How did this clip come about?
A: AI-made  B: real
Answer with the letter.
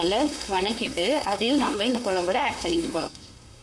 A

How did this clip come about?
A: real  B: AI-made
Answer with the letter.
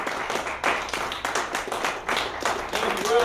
A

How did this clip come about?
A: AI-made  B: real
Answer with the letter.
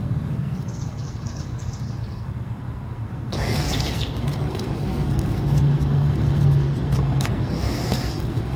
A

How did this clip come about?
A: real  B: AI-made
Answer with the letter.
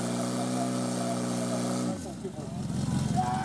A